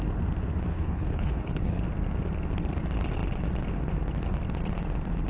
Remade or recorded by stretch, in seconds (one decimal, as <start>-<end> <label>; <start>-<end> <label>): 0.0-0.7 recorded; 0.7-1.8 remade; 1.8-5.3 recorded